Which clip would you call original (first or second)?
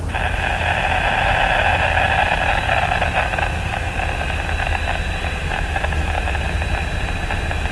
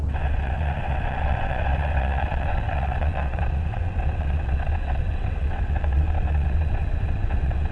first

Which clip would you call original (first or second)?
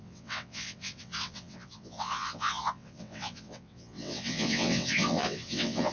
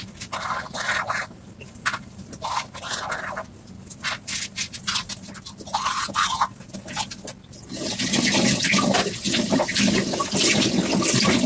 second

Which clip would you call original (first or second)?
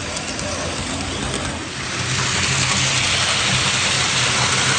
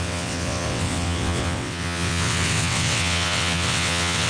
first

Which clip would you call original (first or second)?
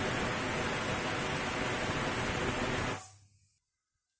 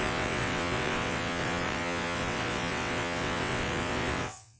first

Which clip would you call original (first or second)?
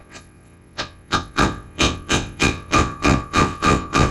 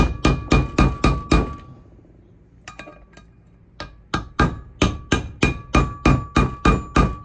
second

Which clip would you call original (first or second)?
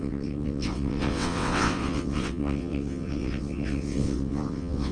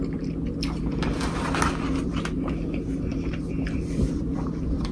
second